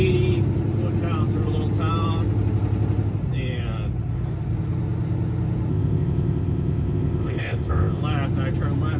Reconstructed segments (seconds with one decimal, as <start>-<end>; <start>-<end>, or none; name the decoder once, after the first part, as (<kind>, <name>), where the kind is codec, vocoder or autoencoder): 5.7-8.0 (codec, ZipCodec)